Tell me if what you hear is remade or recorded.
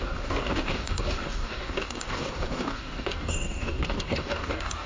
remade